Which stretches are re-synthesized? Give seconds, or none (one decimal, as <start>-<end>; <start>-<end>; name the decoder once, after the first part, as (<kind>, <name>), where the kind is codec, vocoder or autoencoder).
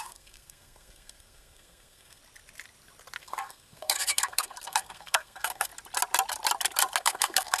0.0-2.2 (codec, SNAC); 3.2-5.7; 7.0-7.6